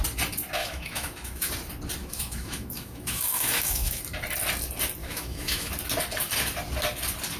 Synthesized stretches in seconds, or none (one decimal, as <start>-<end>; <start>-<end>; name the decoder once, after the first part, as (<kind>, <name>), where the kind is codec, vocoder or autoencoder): 0.6-1.5 (autoencoder, DAC-VAE); 2.0-4.0; 5.0-5.7